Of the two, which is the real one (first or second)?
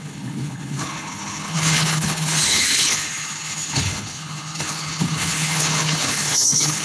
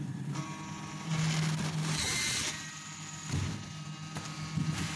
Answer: second